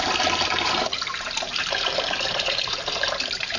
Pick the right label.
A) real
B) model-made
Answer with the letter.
B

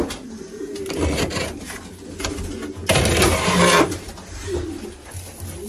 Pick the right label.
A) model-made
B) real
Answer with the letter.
B